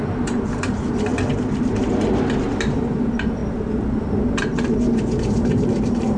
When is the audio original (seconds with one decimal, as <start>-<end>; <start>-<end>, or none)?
1.1-2.9; 3.4-4.0; 4.5-5.2